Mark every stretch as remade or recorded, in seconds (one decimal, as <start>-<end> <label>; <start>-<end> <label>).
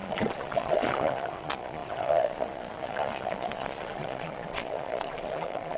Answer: 0.0-5.8 remade